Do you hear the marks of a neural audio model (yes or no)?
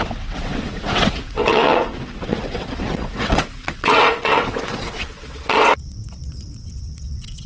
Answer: yes